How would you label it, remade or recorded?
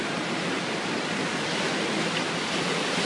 recorded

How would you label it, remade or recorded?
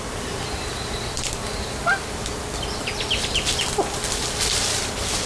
recorded